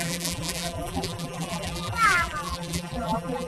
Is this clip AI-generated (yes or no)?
yes